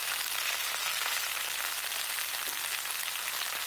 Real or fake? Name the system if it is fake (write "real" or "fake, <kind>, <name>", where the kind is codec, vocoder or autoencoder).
real